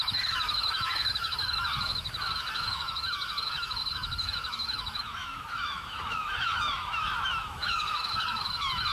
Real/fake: fake